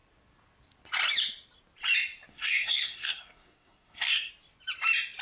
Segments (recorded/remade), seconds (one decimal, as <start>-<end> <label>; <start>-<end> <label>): 0.0-2.3 recorded; 2.3-4.3 remade; 4.3-5.2 recorded